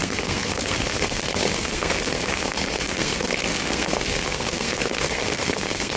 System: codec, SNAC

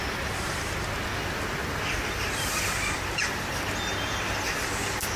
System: none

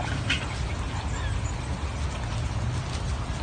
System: none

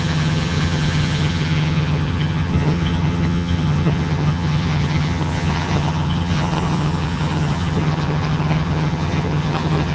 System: vocoder, HiFi-GAN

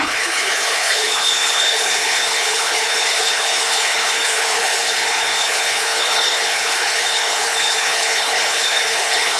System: codec, HILCodec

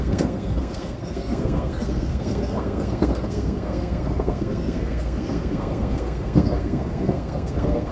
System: codec, SNAC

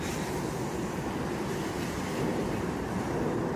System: vocoder, BigVGAN v2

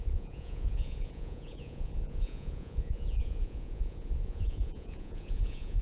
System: vocoder, Vocos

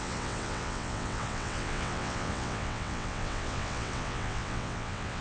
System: vocoder, WaveNeXt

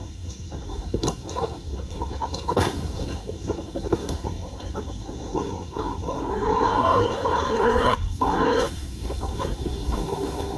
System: codec, SNAC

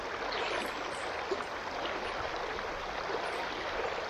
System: none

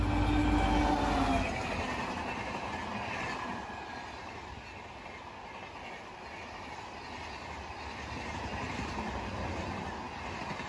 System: none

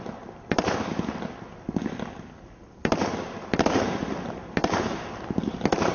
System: none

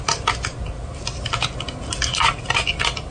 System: none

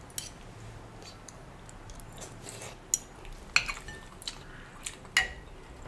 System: none